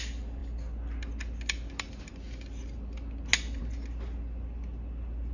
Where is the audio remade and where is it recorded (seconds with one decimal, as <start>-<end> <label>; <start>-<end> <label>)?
0.0-5.3 recorded